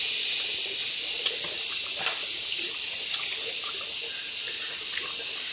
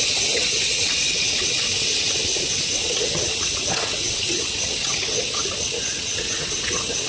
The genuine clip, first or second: first